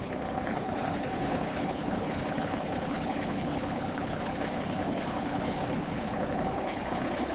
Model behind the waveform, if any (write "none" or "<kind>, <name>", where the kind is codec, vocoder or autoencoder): codec, HILCodec